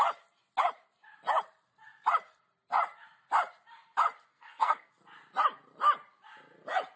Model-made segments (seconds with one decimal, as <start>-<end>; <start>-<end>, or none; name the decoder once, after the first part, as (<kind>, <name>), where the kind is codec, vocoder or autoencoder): 4.3-4.9 (codec, SNAC)